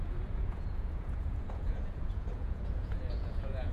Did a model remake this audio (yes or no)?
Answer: yes